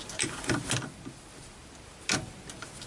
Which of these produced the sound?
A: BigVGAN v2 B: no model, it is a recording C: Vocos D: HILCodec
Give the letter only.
B